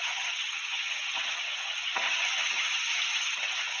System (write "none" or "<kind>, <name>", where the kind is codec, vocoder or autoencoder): vocoder, HiFi-GAN